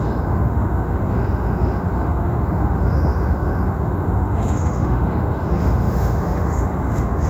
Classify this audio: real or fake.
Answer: fake